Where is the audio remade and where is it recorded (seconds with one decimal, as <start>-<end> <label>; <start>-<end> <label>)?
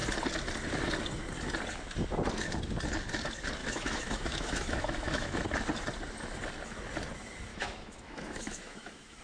0.0-3.6 recorded; 3.6-5.4 remade; 5.4-7.5 recorded; 7.5-9.2 remade